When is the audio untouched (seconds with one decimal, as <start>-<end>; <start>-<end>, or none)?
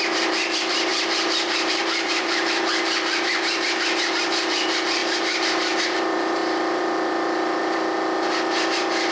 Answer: none